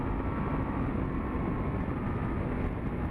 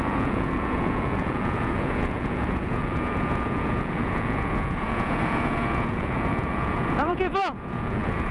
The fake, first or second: second